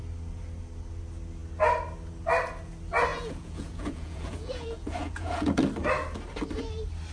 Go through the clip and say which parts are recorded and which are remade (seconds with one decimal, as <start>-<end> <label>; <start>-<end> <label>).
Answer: 0.0-3.1 recorded; 3.1-5.6 remade; 5.6-7.1 recorded